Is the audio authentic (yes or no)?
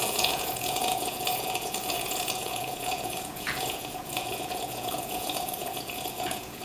no